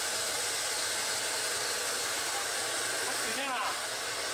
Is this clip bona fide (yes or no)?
yes